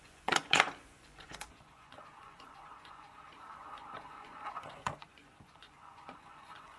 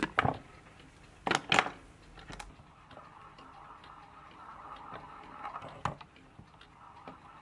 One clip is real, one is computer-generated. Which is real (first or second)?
second